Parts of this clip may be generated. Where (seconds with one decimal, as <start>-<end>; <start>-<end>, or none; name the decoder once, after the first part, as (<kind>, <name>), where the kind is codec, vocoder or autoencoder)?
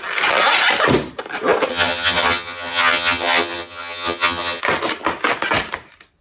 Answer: 1.7-4.6 (vocoder, HiFi-GAN)